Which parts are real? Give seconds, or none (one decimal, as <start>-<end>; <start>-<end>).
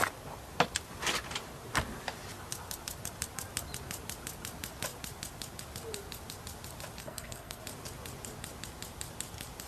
0.0-7.0; 7.6-9.7